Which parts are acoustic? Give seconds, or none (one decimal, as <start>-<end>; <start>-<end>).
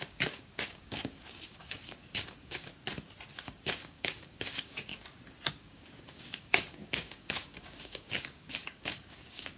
2.7-3.3; 4.9-5.5